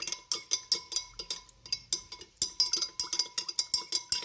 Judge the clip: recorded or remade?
recorded